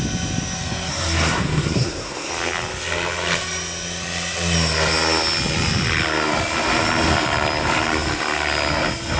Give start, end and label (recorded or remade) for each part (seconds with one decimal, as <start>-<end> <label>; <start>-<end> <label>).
0.0-0.9 recorded; 0.9-2.3 remade; 2.3-9.2 recorded